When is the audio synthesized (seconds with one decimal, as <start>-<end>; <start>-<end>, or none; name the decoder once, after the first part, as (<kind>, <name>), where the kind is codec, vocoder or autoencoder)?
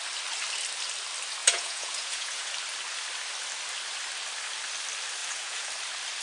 1.4-2.5 (vocoder, Vocos); 5.2-5.7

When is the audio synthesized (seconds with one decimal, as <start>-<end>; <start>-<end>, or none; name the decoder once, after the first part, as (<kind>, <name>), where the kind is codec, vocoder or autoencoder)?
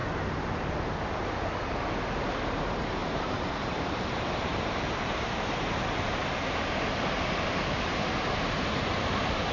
0.0-0.8 (vocoder, BigVGAN v2); 3.0-5.7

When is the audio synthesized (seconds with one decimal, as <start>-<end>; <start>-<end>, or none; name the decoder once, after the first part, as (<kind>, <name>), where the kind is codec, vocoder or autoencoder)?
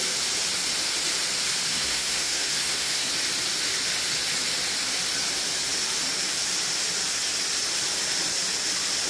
1.7-3.1 (codec, SNAC)